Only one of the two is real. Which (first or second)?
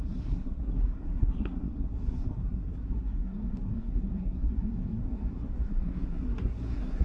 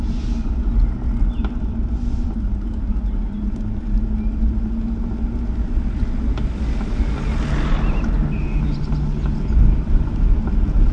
second